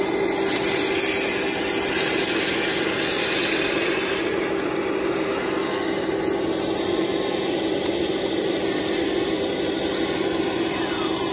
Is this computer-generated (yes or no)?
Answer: no